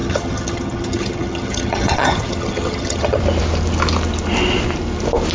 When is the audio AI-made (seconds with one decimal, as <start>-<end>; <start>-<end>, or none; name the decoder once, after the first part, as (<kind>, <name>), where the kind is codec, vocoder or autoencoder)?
0.0-3.2 (vocoder, HiFi-GAN)

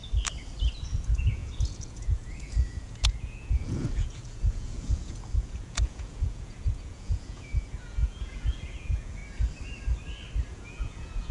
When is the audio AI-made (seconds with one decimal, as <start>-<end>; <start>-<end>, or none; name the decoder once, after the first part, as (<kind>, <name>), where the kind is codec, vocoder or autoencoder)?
0.9-9.2 (vocoder, Vocos); 10.5-11.3

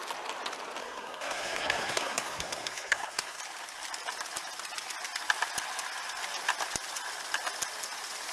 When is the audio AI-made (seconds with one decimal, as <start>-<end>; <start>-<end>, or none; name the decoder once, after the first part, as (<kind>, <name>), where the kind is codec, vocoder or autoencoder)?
0.8-3.4 (codec, SNAC)

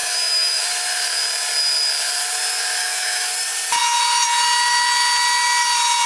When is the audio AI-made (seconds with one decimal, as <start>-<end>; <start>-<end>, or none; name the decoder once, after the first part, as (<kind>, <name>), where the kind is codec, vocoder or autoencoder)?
0.0-0.6 (autoencoder, DAC-VAE); 2.8-3.3

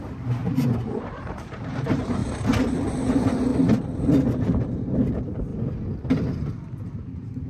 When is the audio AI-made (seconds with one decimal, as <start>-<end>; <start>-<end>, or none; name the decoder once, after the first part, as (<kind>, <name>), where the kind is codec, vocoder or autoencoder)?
0.0-2.2 (vocoder, BigVGAN v2); 3.1-3.5; 4.4-5.5; 6.9-7.5